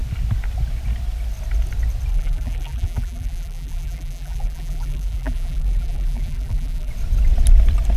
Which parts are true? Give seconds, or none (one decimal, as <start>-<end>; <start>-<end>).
0.0-2.1; 6.9-8.0